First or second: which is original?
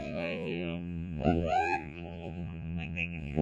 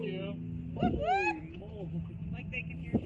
second